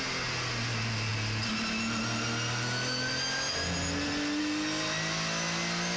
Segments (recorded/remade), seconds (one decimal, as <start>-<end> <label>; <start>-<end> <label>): 0.0-6.0 recorded